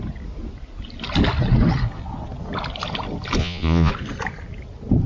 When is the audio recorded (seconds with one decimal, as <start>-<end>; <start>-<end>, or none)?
0.0-3.4; 3.9-5.1

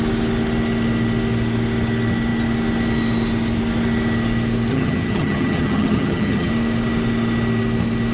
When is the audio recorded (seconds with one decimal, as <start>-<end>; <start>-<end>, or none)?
0.0-4.7; 6.5-8.1

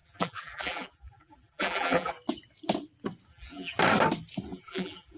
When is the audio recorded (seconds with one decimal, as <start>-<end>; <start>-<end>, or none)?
2.1-3.3; 3.8-4.5

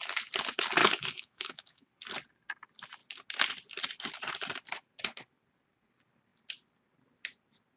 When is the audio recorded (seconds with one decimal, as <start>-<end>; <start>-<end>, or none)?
0.0-0.8; 1.9-7.8